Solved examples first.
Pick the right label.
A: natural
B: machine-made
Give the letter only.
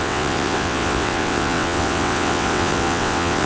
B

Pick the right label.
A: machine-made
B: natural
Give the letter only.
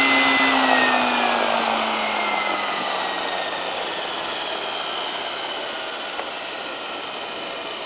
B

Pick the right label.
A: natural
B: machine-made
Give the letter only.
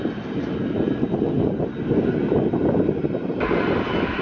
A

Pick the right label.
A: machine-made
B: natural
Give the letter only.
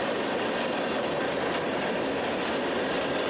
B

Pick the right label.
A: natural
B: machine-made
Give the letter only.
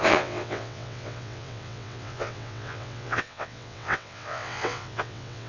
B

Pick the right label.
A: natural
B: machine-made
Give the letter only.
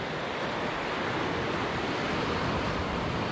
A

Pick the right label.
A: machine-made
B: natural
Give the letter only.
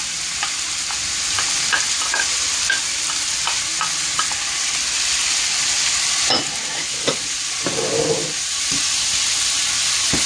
B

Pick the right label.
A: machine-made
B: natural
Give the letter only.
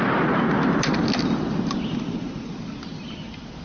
B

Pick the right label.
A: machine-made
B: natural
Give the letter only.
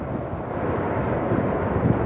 B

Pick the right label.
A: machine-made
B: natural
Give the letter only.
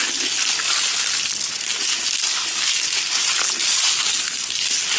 B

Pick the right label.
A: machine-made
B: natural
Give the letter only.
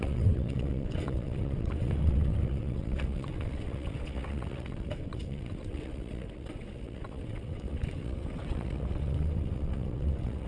A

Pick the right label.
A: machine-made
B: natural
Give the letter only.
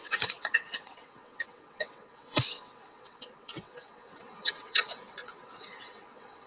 A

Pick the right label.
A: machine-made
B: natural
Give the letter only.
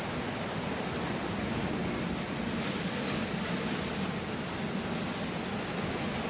B